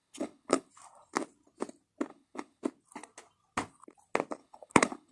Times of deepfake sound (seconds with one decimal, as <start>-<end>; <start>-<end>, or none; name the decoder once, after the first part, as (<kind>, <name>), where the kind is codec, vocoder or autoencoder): 0.0-0.7 (codec, HILCodec); 2.1-2.6; 4.4-5.1